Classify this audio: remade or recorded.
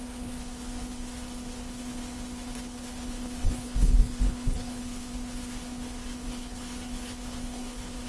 remade